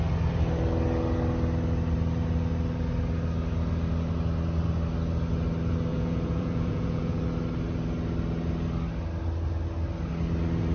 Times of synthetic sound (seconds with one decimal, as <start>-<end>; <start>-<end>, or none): 5.9-7.2